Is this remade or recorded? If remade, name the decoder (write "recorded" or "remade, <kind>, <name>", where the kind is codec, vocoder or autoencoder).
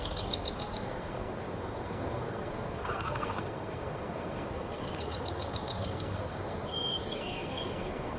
remade, codec, SNAC